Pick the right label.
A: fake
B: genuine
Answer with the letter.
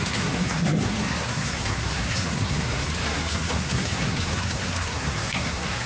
A